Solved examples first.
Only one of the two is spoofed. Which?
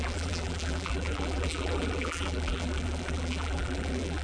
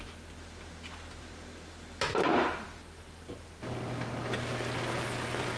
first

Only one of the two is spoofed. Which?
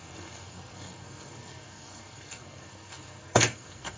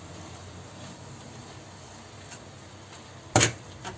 first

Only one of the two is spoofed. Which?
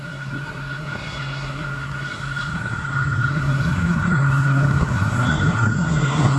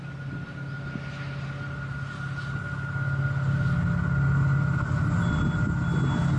first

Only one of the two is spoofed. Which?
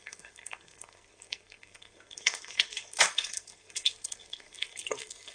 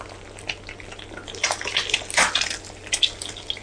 first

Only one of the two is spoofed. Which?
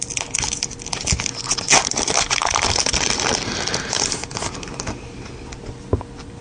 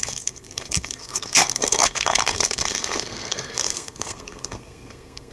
second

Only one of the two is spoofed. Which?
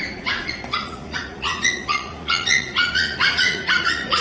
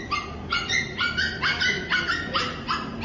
first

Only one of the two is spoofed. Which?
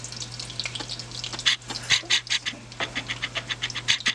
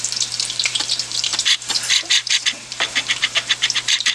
second